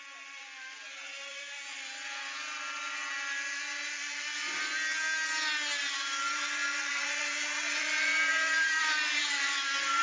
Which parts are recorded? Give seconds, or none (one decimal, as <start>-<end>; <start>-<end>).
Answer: 0.0-1.3; 1.8-5.8